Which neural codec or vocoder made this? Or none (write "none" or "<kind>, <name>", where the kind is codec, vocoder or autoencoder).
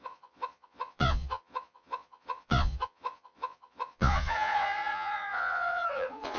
vocoder, Vocos